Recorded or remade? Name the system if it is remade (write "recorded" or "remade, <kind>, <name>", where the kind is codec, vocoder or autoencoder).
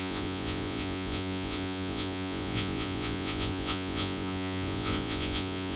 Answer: remade, vocoder, Vocos